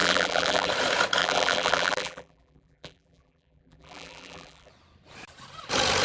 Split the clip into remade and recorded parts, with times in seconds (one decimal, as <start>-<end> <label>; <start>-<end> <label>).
0.0-0.7 remade; 0.7-1.2 recorded; 1.2-4.7 remade; 4.7-6.0 recorded